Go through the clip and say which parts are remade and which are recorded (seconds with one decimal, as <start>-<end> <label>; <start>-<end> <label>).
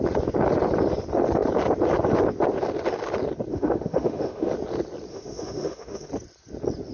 0.0-3.5 recorded; 3.5-4.5 remade; 4.5-5.1 recorded; 5.1-6.1 remade; 6.1-6.9 recorded